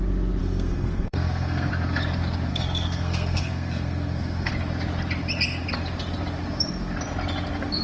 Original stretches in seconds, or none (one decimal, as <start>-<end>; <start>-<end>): 0.0-0.4; 1.7-2.5; 4.5-7.8